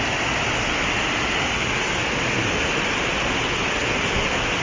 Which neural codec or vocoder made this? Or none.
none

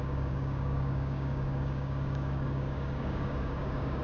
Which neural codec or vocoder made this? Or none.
codec, DAC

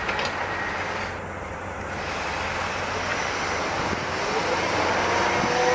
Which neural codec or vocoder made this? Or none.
none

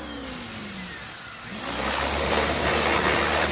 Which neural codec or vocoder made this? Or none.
none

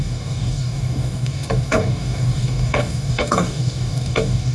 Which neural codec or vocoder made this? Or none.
codec, DAC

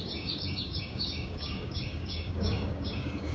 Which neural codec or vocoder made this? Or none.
codec, DAC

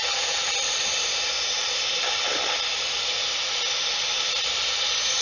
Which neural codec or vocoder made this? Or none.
none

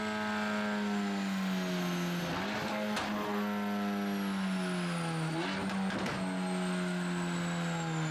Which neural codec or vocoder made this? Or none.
none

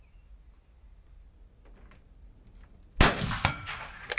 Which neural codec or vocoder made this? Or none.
none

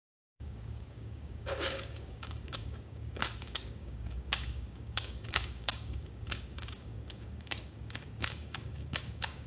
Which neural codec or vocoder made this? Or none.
codec, DAC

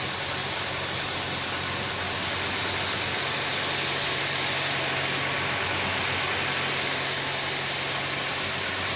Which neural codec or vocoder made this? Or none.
none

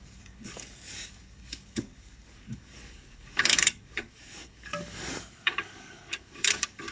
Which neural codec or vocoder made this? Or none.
codec, DAC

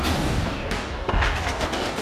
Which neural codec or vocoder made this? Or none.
codec, DAC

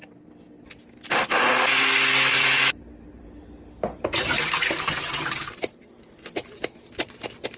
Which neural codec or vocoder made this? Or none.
none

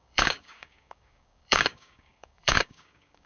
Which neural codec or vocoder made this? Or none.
codec, DAC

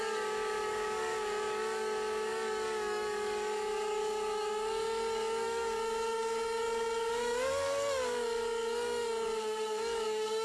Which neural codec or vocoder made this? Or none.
codec, DAC